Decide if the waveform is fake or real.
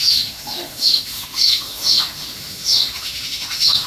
fake